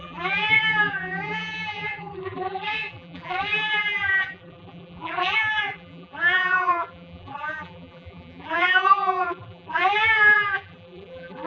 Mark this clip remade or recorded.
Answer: remade